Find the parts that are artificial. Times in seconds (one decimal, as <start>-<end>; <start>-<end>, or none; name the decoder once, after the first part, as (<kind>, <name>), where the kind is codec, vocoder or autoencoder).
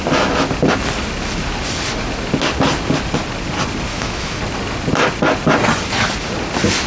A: 3.9-4.4 (autoencoder, DAC-VAE)